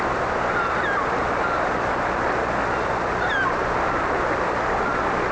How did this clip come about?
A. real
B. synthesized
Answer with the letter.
A